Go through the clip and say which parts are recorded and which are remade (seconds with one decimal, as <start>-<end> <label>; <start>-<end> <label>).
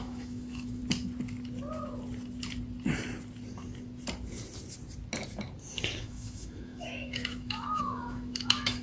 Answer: 0.0-0.8 remade; 0.8-6.0 recorded; 6.0-8.8 remade